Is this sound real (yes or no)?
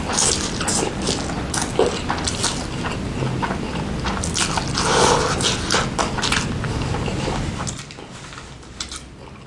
yes